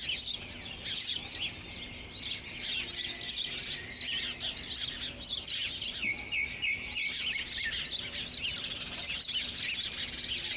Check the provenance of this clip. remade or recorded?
recorded